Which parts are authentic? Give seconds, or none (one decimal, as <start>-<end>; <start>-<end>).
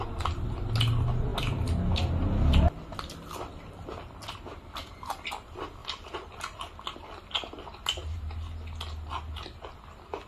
0.0-10.3